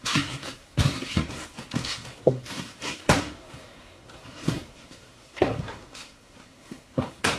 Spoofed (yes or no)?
yes